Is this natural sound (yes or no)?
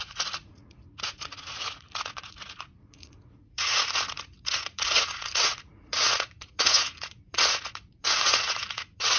no